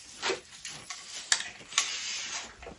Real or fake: real